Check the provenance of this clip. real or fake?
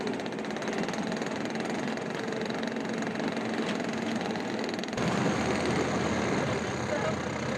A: real